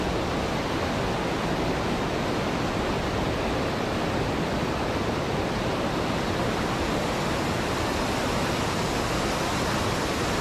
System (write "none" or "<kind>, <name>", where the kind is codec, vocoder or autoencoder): none